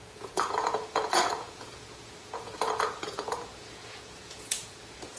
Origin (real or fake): fake